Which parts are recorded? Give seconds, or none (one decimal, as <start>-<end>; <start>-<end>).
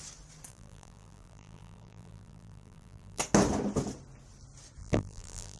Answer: 0.0-0.5; 3.2-4.8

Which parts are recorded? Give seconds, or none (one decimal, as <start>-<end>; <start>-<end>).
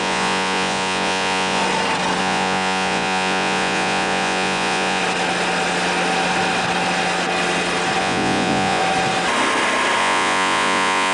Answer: 1.6-2.2; 5.0-8.0; 8.8-10.0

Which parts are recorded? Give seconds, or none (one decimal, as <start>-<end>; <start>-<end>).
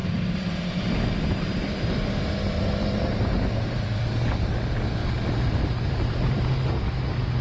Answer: 4.4-5.0; 6.7-7.4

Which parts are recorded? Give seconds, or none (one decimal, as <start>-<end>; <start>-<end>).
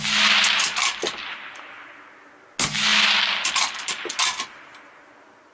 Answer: 0.0-5.5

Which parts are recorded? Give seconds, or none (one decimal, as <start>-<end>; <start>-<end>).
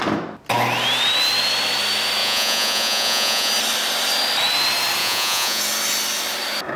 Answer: 0.0-2.2; 3.5-5.0; 5.6-6.8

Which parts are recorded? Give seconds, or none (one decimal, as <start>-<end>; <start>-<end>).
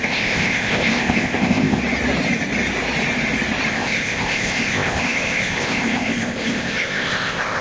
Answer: 1.8-3.7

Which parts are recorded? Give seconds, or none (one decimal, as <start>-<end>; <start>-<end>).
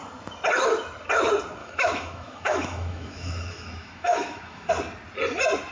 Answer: 0.0-1.6; 4.7-5.7